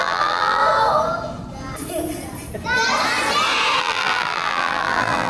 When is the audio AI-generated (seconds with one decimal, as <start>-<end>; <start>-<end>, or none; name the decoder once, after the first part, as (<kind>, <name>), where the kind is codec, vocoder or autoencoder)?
0.0-0.6 (vocoder, BigVGAN v2); 3.8-5.3